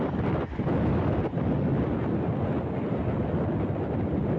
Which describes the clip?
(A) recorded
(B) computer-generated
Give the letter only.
A